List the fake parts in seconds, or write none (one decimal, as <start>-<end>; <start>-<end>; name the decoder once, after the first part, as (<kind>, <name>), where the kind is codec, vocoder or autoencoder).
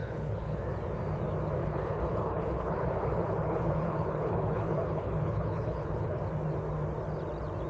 0.0-0.6 (codec, HILCodec); 1.6-6.2